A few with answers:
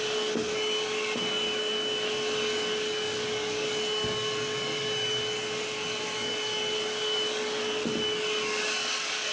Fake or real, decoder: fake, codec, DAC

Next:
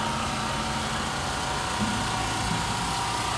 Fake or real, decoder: real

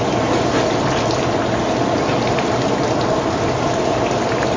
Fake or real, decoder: real